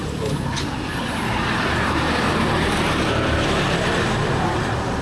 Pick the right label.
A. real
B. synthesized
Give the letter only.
B